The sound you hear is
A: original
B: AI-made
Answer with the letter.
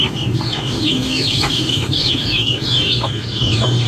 B